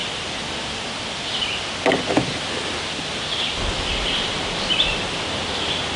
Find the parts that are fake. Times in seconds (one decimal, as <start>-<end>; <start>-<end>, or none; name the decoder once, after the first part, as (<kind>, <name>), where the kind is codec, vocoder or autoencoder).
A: none